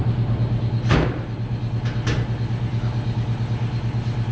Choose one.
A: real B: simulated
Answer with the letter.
A